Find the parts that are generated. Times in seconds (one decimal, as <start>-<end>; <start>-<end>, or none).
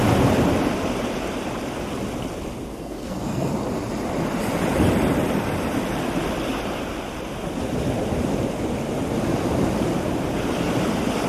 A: 2.7-3.5